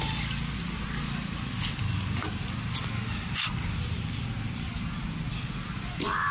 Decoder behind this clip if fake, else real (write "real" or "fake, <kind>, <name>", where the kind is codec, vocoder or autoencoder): real